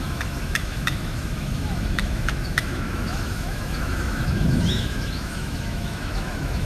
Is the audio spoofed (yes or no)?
yes